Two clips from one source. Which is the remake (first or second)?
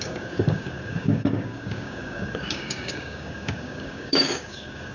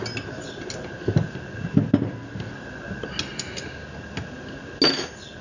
first